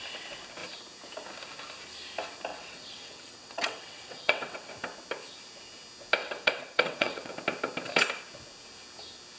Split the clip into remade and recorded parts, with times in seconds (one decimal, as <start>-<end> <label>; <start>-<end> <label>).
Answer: 0.0-2.5 recorded; 2.5-4.7 remade; 4.7-6.2 recorded; 6.2-7.3 remade; 7.3-9.4 recorded